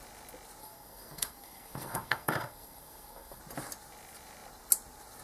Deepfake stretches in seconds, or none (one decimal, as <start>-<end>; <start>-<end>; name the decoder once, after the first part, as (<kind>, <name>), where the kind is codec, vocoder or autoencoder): 0.6-3.4 (codec, SNAC)

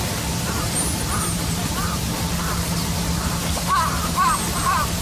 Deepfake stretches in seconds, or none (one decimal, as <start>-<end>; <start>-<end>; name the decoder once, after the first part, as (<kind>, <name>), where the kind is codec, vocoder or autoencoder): none

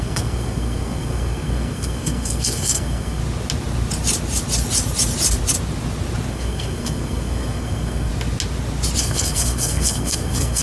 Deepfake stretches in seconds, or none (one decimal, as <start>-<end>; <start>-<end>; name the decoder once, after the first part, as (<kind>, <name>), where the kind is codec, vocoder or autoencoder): 0.0-3.2 (codec, SNAC); 6.3-8.1; 9.0-10.6

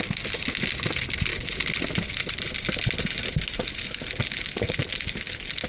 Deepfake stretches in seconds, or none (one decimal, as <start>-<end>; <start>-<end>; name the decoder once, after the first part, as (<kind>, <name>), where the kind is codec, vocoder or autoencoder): none

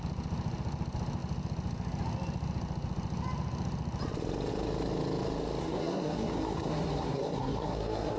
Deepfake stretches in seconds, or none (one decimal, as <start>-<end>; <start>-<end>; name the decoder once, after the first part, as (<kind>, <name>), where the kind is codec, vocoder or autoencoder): 5.6-8.2 (codec, SNAC)

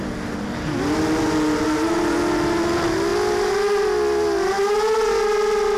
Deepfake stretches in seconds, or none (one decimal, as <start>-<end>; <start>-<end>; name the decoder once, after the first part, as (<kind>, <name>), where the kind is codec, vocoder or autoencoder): none